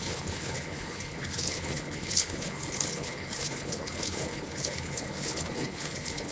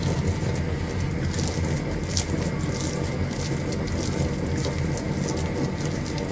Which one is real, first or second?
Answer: second